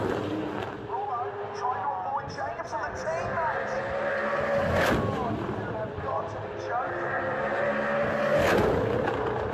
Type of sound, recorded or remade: recorded